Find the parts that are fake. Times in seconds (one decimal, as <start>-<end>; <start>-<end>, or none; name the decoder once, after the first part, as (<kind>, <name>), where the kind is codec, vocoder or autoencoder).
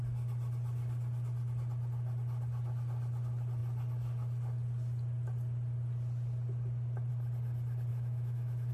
7.9-8.7 (autoencoder, DAC-VAE)